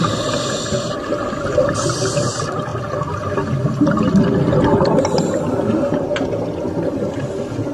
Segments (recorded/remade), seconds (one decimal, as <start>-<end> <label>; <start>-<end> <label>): 0.0-7.7 recorded